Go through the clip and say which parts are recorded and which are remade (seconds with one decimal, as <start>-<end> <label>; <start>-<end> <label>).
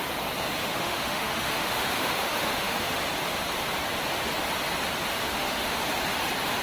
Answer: 0.0-0.6 recorded; 0.6-3.0 remade; 3.0-5.2 recorded; 5.2-5.8 remade; 5.8-6.6 recorded